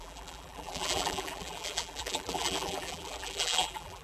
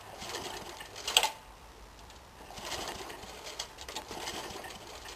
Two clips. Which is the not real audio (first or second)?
first